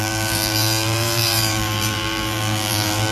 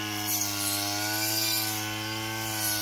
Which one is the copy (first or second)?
first